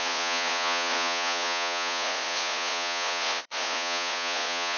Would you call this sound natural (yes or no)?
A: no